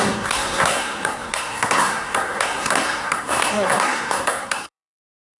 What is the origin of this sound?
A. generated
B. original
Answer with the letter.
A